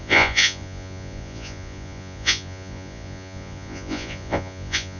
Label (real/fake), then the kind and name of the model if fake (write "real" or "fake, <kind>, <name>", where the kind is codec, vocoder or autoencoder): fake, vocoder, Vocos